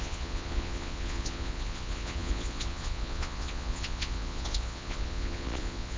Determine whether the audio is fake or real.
fake